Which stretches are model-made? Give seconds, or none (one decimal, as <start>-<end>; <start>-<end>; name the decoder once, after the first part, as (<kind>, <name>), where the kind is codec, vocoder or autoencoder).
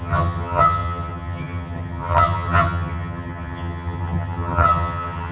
0.0-5.3 (vocoder, HiFi-GAN)